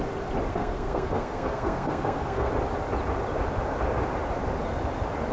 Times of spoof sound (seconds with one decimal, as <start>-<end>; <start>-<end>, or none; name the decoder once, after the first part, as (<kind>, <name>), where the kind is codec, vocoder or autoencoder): 0.5-2.5 (codec, SNAC)